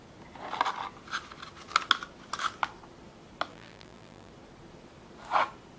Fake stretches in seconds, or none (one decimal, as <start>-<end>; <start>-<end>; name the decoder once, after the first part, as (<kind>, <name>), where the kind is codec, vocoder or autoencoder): 3.5-4.3 (vocoder, BigVGAN v2)